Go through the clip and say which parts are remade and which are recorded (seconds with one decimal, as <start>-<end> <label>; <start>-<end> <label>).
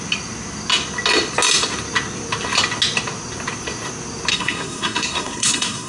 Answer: 0.0-4.3 recorded; 4.3-5.9 remade